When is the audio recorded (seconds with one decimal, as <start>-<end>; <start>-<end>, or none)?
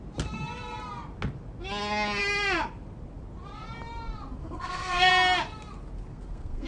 0.0-4.4; 5.1-6.1